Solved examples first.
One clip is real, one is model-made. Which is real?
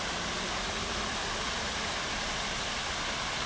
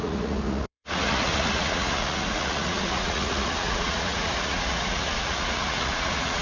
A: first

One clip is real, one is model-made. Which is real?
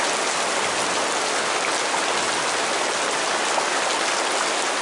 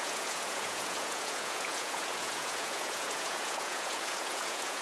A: first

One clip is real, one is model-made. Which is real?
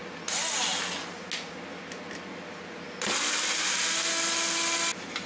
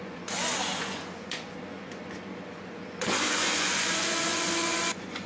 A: first